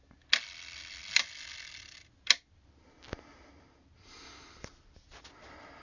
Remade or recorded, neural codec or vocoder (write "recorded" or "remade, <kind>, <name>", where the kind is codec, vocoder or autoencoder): recorded